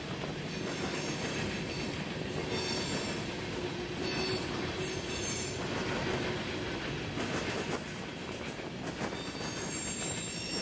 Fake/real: real